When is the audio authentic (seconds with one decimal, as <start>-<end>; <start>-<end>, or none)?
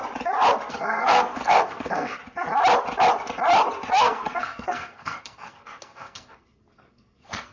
0.0-0.7; 2.2-3.9